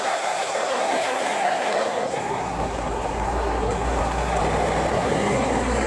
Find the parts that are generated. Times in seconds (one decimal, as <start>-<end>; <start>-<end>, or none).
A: 0.0-4.4; 4.9-5.9